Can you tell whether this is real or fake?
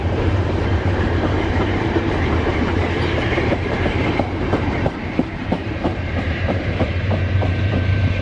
fake